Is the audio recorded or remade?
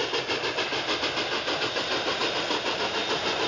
recorded